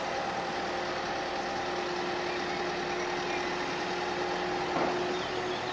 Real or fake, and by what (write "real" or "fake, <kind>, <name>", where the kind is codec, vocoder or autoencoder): real